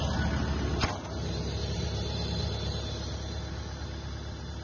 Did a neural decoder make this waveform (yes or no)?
no